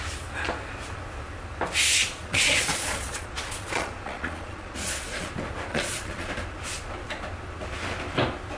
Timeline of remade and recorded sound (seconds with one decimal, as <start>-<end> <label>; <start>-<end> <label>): 0.0-2.0 recorded; 2.0-5.3 remade; 5.3-5.7 recorded; 5.7-6.3 remade; 6.3-8.6 recorded